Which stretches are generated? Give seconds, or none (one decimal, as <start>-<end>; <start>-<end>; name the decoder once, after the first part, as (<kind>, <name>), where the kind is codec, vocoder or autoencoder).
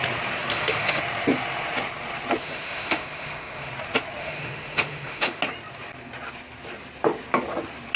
0.5-1.0 (autoencoder, DAC-VAE); 2.4-3.7; 4.2-5.4